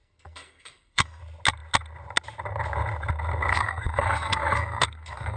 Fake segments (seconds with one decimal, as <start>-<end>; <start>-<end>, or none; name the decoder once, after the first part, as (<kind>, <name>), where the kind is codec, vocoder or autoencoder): 0.0-1.2 (codec, SNAC); 3.5-5.4